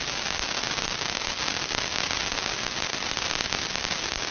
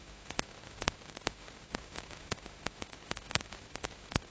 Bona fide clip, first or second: first